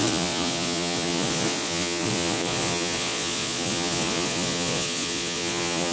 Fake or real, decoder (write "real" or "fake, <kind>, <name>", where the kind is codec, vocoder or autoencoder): fake, vocoder, Vocos